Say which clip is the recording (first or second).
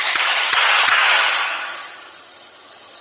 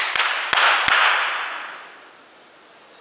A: second